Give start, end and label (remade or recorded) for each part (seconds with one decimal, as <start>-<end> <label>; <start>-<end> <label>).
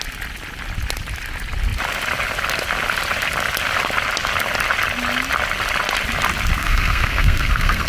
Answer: 0.0-6.6 recorded; 6.6-7.9 remade